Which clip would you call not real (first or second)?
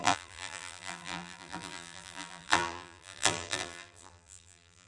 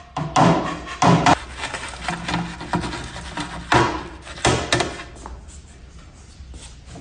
first